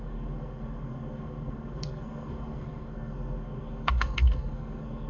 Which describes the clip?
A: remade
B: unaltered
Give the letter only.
A